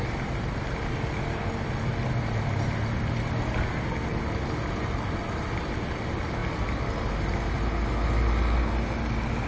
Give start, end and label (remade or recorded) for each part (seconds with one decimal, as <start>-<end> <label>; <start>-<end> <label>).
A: 0.0-9.5 recorded

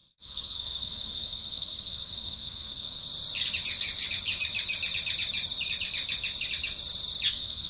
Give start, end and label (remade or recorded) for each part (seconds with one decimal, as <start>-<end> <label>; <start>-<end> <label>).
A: 0.0-3.1 remade; 3.1-7.3 recorded; 7.3-7.7 remade

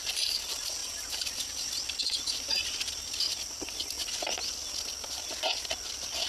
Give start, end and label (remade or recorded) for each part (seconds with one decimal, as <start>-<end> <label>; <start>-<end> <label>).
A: 0.0-6.3 recorded

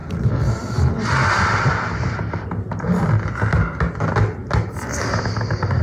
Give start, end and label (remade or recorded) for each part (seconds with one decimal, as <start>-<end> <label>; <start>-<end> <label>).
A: 0.0-5.8 recorded

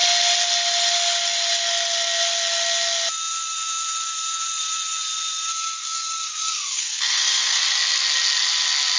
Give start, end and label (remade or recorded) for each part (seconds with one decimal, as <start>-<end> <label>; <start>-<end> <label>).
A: 0.0-5.5 recorded; 5.5-7.6 remade; 7.6-9.0 recorded